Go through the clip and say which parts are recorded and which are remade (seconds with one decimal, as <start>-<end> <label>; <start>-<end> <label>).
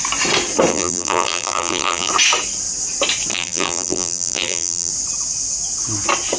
0.0-0.7 recorded; 0.7-2.1 remade; 2.1-3.3 recorded; 3.3-4.9 remade; 4.9-6.4 recorded